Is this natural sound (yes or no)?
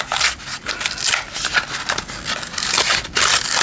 yes